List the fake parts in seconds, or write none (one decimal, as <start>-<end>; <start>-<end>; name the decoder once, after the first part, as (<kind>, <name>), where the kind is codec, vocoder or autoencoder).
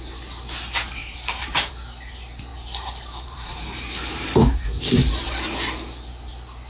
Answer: 1.0-1.7 (vocoder, BigVGAN v2); 2.5-5.1